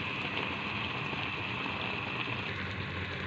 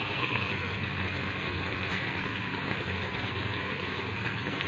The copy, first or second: second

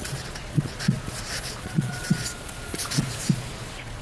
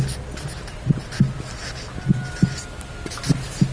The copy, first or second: first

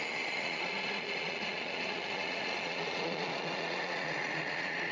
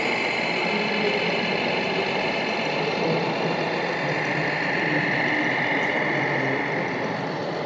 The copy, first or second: first